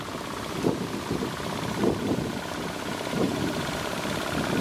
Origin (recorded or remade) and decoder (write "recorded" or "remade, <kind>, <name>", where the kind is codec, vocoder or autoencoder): remade, vocoder, BigVGAN v2